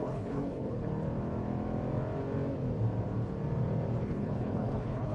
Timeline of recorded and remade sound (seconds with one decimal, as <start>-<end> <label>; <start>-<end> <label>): 0.0-0.9 remade; 0.9-4.0 recorded; 4.0-5.1 remade